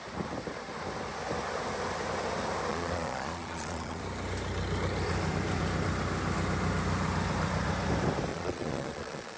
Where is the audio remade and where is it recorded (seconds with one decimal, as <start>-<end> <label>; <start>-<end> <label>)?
0.0-2.7 recorded; 2.7-4.0 remade; 4.0-8.3 recorded; 8.3-9.4 remade

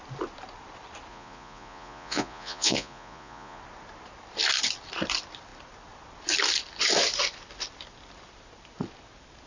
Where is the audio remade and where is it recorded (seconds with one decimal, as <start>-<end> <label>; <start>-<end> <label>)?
0.0-1.1 recorded; 1.1-3.6 remade; 3.6-9.5 recorded

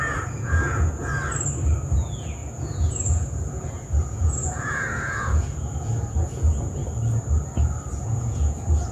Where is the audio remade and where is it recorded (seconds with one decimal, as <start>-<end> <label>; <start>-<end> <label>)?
0.0-1.1 remade; 1.1-1.9 recorded; 1.9-6.8 remade; 6.8-7.9 recorded; 7.9-8.9 remade